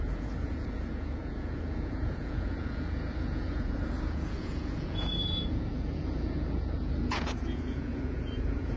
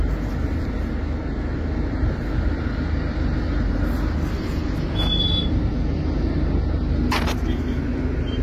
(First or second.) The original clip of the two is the second